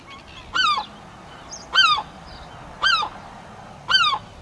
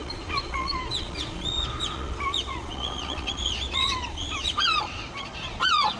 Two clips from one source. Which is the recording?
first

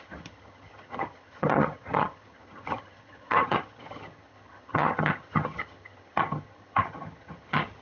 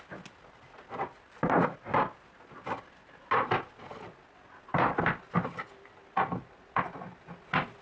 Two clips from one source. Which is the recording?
second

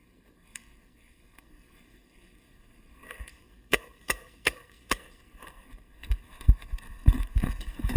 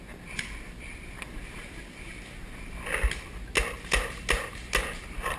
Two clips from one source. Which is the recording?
second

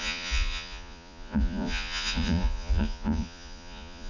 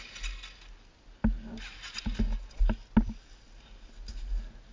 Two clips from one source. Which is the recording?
second